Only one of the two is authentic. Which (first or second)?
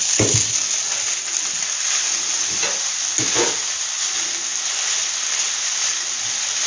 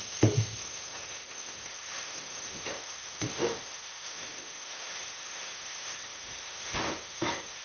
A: first